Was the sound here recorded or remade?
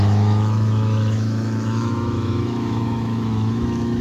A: remade